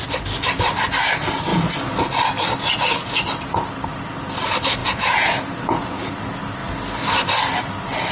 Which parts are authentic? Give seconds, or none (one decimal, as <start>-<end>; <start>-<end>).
0.0-4.8; 6.1-8.1